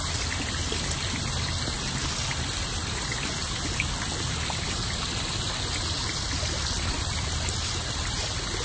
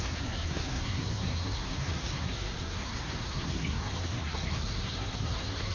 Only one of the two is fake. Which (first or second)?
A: second